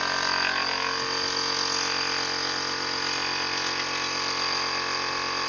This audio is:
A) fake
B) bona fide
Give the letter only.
B